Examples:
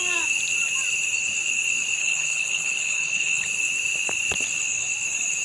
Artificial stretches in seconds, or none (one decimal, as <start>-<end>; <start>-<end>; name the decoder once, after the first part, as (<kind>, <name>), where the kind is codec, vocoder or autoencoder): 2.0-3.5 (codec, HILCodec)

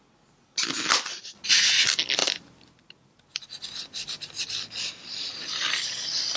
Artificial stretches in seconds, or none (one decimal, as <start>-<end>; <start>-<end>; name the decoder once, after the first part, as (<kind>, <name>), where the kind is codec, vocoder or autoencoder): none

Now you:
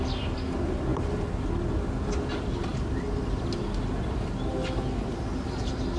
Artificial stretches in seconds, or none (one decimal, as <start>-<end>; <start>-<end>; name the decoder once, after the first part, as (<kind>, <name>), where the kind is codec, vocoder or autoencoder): none

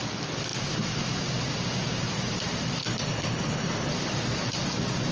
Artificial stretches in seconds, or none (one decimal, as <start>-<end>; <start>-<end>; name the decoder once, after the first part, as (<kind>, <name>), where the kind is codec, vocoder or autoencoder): 2.8-3.9 (codec, HILCodec)

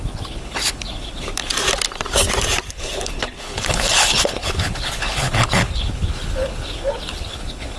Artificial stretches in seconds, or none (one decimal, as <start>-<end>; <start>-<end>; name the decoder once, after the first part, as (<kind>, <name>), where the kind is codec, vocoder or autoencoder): 0.0-1.5 (codec, HILCodec); 2.7-7.8